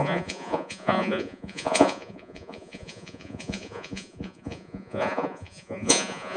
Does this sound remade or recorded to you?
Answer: remade